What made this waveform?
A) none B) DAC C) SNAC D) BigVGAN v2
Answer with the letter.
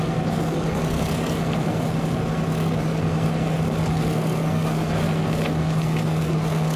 C